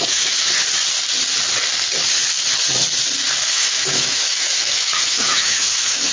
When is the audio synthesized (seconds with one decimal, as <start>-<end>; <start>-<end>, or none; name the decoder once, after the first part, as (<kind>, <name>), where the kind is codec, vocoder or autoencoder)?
0.0-0.4 (autoencoder, DAC-VAE); 3.5-6.1